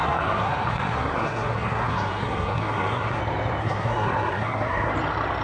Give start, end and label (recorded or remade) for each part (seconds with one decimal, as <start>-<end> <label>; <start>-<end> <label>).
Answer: 0.0-3.2 remade; 3.2-3.6 recorded; 3.6-4.9 remade; 4.9-5.4 recorded